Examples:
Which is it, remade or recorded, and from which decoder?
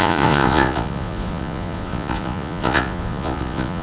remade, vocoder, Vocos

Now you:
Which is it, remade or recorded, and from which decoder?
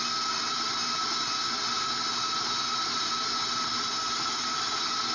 recorded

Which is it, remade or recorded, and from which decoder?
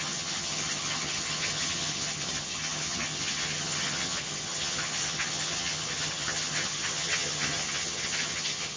remade, vocoder, HiFi-GAN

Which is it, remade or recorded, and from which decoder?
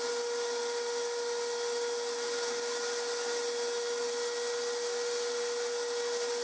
recorded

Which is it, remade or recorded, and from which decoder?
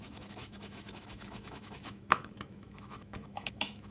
remade, autoencoder, DAC-VAE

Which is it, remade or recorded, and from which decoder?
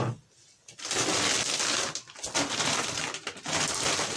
recorded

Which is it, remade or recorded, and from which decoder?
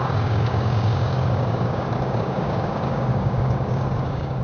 remade, codec, DAC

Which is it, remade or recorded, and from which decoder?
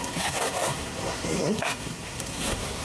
remade, codec, SNAC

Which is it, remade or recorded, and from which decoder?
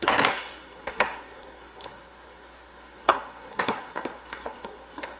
remade, codec, SNAC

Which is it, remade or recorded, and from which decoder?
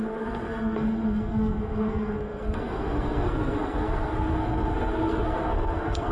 remade, codec, SNAC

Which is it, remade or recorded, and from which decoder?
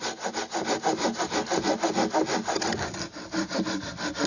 recorded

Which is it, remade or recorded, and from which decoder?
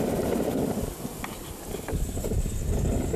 recorded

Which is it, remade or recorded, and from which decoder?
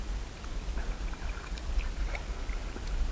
recorded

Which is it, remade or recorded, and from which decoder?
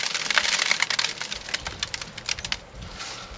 recorded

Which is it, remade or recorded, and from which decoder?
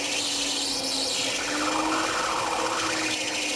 recorded